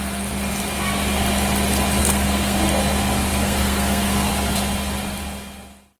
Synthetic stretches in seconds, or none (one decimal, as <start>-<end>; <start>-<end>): 2.0-2.6; 3.3-4.3